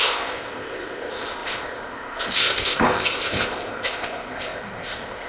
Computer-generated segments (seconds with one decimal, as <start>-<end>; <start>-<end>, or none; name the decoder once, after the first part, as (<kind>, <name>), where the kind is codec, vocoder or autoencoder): 0.0-5.3 (codec, ZipCodec)